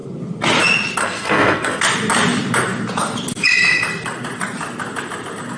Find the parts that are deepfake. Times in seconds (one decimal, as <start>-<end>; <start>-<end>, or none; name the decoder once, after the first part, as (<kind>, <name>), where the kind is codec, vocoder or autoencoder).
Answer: 1.0-1.8 (codec, SNAC)